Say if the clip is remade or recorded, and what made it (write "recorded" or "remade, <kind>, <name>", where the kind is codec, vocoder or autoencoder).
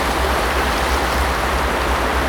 recorded